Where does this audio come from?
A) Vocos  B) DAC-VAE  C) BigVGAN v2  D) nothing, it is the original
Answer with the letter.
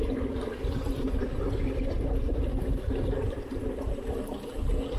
D